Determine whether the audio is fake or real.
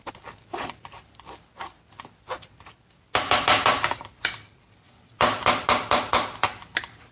real